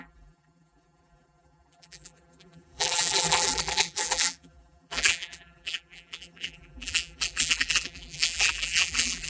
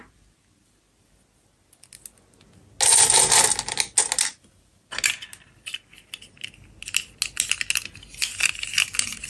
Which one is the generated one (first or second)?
first